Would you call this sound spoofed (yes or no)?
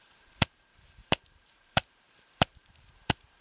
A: yes